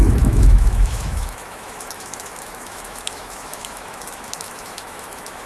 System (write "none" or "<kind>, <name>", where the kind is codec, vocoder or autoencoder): autoencoder, DAC-VAE